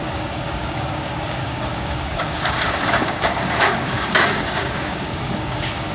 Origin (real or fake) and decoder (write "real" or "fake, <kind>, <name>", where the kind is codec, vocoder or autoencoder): fake, codec, DAC